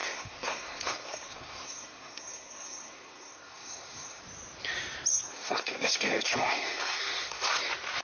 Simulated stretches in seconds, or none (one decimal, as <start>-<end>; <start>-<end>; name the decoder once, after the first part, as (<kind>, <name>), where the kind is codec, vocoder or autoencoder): 0.0-4.2 (codec, SNAC); 5.1-7.6